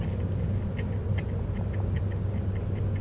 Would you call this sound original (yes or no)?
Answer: yes